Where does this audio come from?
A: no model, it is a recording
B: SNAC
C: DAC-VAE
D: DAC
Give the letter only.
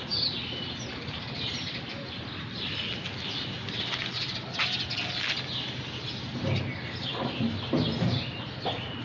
A